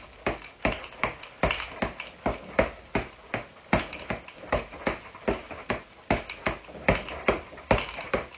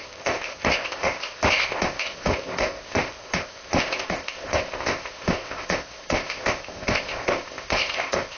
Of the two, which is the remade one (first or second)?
second